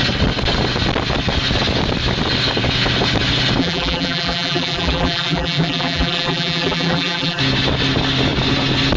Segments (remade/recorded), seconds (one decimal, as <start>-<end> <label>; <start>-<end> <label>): 0.0-3.6 recorded; 3.6-7.4 remade; 7.4-9.0 recorded

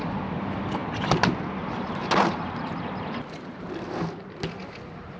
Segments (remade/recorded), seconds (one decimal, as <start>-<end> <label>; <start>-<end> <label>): 0.0-5.2 recorded

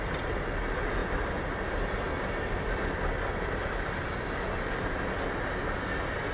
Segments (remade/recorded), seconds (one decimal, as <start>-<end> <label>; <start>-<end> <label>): 0.0-6.3 recorded